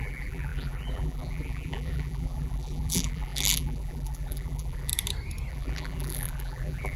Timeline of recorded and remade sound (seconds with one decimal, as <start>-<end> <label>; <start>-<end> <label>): 0.0-4.9 remade; 4.9-5.5 recorded; 5.5-7.0 remade